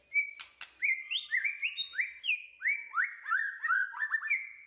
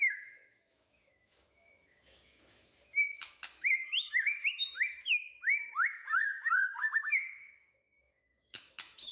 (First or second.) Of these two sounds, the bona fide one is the first